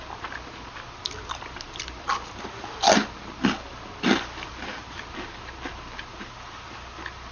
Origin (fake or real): real